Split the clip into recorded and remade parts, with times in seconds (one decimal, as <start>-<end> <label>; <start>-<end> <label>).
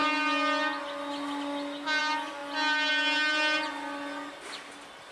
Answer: 0.0-5.1 recorded